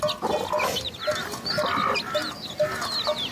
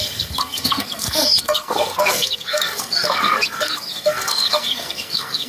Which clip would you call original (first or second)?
first